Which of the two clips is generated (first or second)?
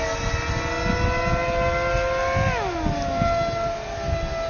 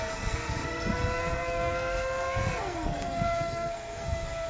second